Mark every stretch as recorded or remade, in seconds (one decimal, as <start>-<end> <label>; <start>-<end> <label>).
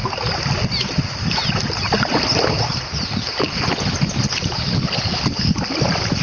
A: 0.0-6.2 recorded